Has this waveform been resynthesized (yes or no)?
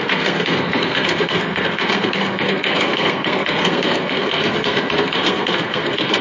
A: yes